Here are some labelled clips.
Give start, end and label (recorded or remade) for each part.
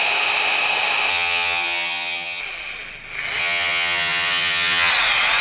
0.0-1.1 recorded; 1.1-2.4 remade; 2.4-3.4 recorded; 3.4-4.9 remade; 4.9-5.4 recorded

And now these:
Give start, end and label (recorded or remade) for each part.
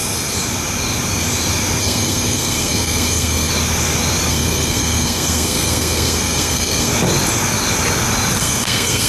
0.0-1.8 recorded; 1.8-3.5 remade; 3.5-4.3 recorded; 4.3-6.9 remade; 6.9-8.4 recorded; 8.4-9.1 remade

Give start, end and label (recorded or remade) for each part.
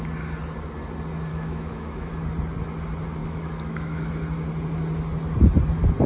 0.0-1.3 recorded; 1.3-2.1 remade; 2.1-3.2 recorded; 3.2-4.1 remade; 4.1-6.1 recorded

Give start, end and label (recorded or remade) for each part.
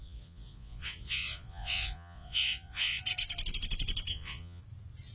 0.0-3.0 remade; 3.0-4.1 recorded; 4.1-4.6 remade; 4.6-5.1 recorded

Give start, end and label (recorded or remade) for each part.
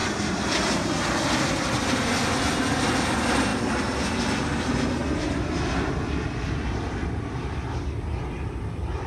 0.0-9.1 recorded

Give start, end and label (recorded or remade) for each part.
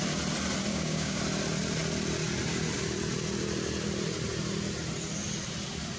0.0-0.7 recorded; 0.7-1.2 remade; 1.2-6.0 recorded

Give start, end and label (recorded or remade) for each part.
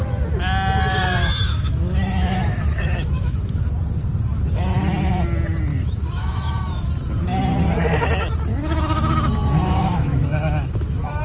0.0-1.2 recorded; 1.2-3.7 remade; 3.7-5.7 recorded; 5.7-6.9 remade; 6.9-8.5 recorded; 8.5-11.2 remade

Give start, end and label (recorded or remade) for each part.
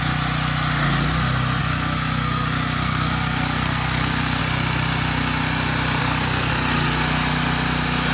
0.0-1.6 recorded; 1.6-4.4 remade; 4.4-6.0 recorded; 6.0-6.5 remade; 6.5-8.1 recorded